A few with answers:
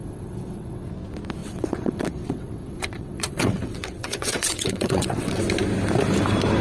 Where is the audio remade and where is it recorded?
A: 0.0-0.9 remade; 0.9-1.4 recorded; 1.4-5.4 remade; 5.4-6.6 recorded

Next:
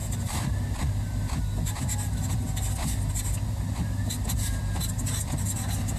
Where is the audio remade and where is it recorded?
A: 0.0-6.0 recorded

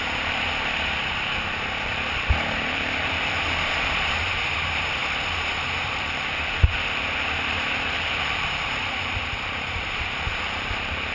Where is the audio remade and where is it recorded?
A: 0.0-5.0 remade; 5.0-5.9 recorded; 5.9-11.1 remade

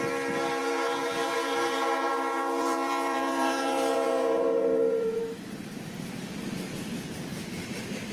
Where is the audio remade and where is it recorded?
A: 0.0-0.6 recorded; 0.6-5.2 remade; 5.2-8.1 recorded